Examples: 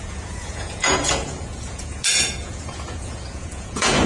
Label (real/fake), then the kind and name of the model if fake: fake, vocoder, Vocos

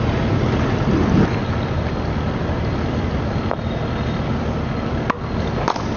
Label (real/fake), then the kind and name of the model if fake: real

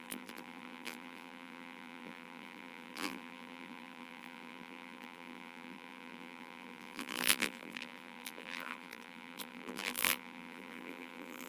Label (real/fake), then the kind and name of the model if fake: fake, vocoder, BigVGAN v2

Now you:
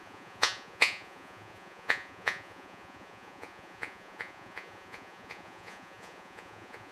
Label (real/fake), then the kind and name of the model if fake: fake, vocoder, Vocos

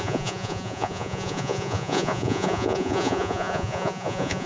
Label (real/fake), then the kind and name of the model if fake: fake, vocoder, Vocos